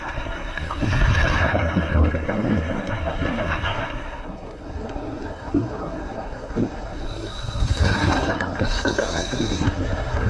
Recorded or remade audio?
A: remade